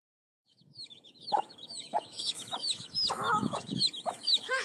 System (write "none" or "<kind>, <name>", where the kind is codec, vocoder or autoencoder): autoencoder, DAC-VAE